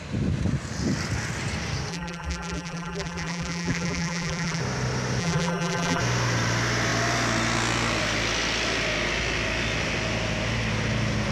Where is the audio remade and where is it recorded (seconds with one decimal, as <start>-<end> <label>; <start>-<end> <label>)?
0.0-1.9 recorded; 1.9-4.6 remade; 4.6-5.2 recorded; 5.2-6.0 remade; 6.0-11.3 recorded